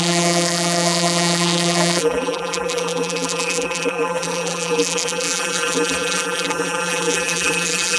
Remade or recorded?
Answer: remade